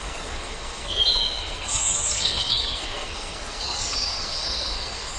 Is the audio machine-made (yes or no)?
yes